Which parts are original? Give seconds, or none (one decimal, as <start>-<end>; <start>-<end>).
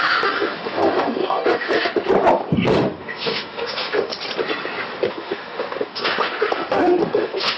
2.1-2.7; 4.1-5.1